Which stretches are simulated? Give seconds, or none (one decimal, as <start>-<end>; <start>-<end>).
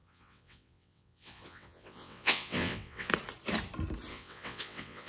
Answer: 0.0-3.1; 4.1-5.1